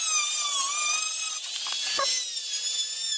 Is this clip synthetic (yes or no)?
no